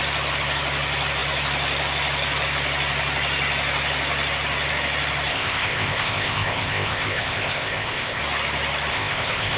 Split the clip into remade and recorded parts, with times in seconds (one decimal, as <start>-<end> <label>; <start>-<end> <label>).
0.0-5.3 recorded; 5.3-8.2 remade; 8.2-8.9 recorded; 8.9-9.6 remade